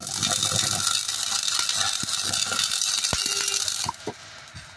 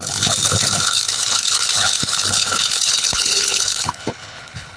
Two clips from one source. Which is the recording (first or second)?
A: first